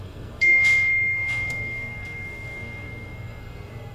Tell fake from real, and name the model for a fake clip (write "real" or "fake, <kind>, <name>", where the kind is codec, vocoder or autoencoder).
fake, codec, SNAC